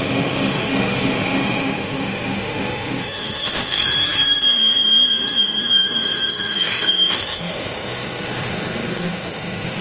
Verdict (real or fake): fake